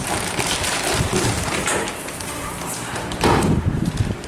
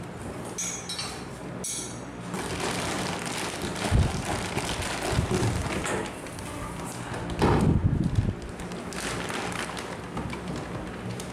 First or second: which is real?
second